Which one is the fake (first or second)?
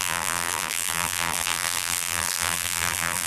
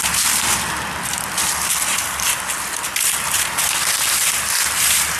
first